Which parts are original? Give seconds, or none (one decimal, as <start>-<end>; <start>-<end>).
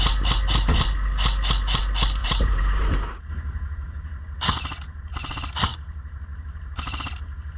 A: 0.0-2.2; 3.3-7.6